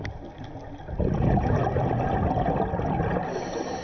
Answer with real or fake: real